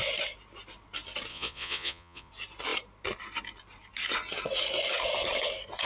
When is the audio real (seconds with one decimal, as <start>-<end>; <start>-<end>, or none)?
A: 0.0-1.3; 2.3-5.9